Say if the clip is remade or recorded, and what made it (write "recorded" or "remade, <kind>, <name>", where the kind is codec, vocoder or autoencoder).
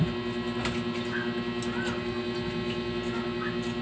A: recorded